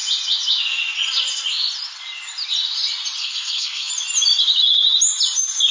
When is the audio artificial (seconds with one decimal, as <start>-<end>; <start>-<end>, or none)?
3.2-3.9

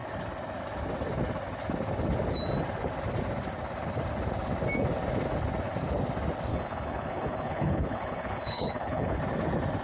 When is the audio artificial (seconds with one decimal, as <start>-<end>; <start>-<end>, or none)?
6.5-9.2

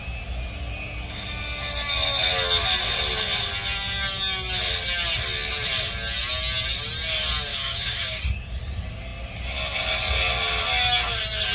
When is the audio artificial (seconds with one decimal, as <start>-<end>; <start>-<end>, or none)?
7.5-8.2

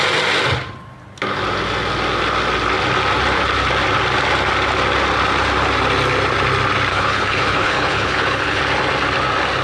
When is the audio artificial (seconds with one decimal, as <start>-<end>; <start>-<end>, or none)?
6.9-8.6

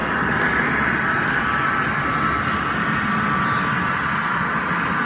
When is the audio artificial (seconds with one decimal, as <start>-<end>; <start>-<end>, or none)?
none

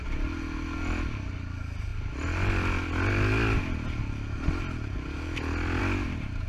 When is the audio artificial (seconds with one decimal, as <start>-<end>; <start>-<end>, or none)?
none

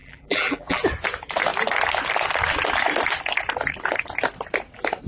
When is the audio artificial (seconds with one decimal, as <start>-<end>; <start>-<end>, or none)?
0.0-0.8

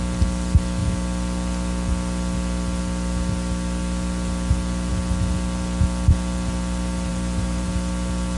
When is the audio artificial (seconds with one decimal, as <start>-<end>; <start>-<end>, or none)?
7.1-7.7